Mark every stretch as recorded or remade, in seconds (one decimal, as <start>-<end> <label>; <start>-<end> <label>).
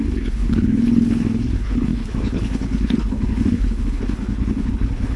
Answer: 0.0-5.2 remade